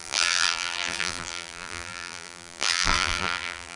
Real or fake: fake